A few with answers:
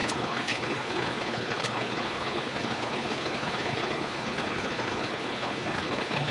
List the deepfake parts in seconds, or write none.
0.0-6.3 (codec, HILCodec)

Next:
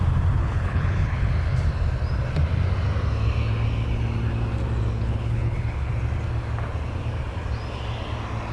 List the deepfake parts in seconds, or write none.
0.4-1.3 (codec, HILCodec); 4.9-5.9

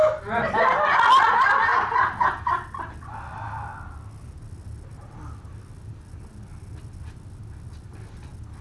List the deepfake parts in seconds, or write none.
none

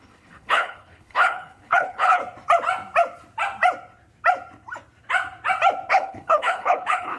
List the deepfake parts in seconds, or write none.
0.0-2.2 (codec, HILCodec); 5.9-7.2

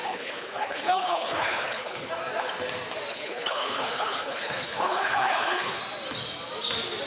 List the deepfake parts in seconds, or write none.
0.0-2.1 (codec, HILCodec); 3.1-5.8

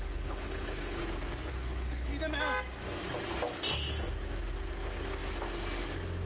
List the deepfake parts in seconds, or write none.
0.0-1.0 (codec, HILCodec); 1.5-2.1